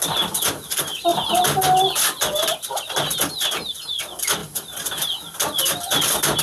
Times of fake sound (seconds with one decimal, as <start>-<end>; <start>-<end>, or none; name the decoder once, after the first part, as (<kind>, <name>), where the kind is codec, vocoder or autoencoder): none